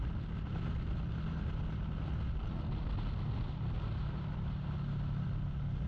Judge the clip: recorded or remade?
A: recorded